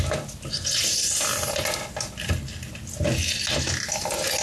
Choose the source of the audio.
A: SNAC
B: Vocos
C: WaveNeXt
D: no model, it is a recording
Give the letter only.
D